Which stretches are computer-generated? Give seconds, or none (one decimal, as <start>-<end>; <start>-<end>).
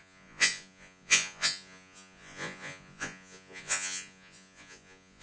0.0-5.2